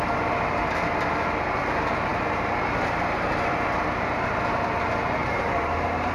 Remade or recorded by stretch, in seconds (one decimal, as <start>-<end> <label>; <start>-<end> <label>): 0.0-5.2 recorded; 5.2-6.1 remade